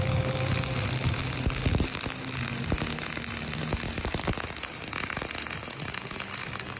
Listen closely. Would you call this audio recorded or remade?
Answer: recorded